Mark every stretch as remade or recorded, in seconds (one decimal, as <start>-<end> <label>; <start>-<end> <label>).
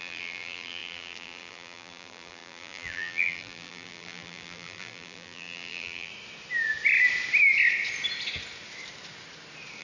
0.0-6.1 remade; 6.1-9.8 recorded